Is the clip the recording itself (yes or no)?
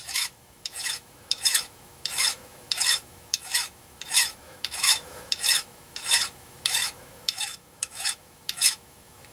no